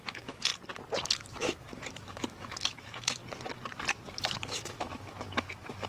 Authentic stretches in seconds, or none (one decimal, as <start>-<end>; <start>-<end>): 0.5-1.1; 3.2-3.9

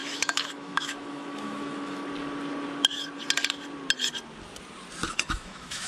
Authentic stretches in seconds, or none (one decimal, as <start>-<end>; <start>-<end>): 2.0-5.1

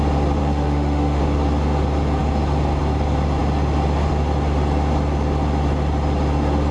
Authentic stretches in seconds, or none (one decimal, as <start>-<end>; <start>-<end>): 0.0-0.4; 1.2-6.7

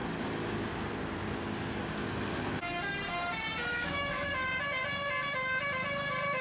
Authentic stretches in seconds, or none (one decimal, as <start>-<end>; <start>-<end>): 0.0-3.7; 4.3-6.4

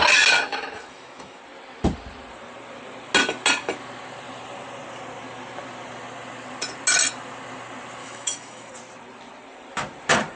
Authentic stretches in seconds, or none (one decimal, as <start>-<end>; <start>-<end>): 0.0-0.5; 1.4-8.0; 8.7-10.4

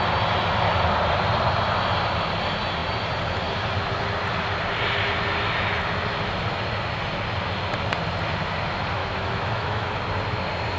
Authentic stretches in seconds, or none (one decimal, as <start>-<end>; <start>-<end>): 0.0-9.0; 9.9-10.8

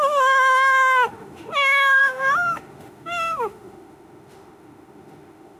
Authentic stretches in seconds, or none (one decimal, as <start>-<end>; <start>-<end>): none